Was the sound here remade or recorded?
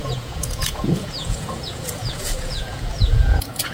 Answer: remade